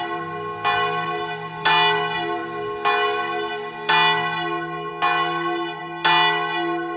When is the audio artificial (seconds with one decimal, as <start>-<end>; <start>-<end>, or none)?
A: none